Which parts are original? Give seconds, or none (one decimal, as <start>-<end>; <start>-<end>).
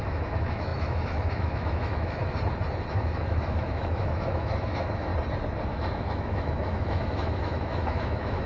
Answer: 2.2-2.9; 5.1-5.7